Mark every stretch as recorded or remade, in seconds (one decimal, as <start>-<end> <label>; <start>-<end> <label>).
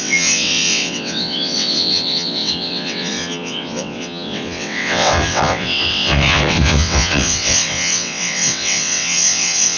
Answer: 0.0-9.8 remade